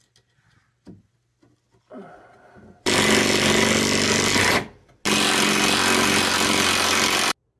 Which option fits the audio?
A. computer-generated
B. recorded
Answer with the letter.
B